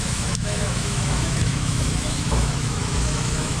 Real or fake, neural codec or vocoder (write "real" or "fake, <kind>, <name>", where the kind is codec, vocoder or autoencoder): fake, autoencoder, DAC-VAE